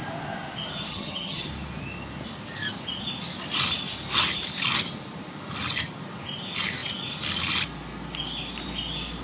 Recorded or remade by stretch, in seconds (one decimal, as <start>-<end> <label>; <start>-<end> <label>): 0.0-0.9 recorded; 0.9-1.5 remade; 1.5-9.2 recorded